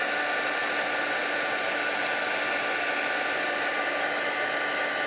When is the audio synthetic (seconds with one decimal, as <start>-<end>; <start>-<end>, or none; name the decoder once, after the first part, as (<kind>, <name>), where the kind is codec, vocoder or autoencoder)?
none